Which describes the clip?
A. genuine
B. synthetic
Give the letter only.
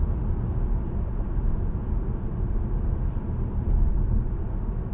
A